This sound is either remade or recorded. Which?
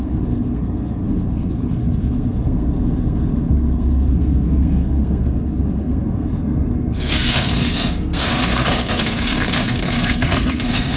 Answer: remade